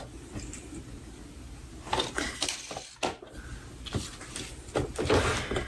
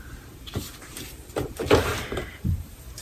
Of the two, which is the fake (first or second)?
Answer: second